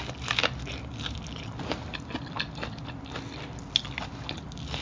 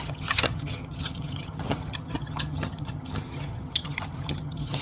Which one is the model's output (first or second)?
second